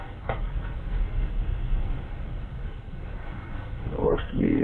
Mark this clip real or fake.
fake